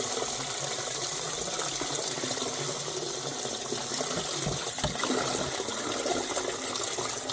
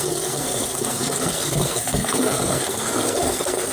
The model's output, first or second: second